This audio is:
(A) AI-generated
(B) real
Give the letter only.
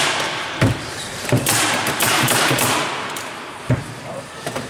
A